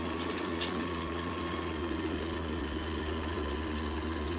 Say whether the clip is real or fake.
fake